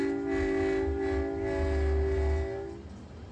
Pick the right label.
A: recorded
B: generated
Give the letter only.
A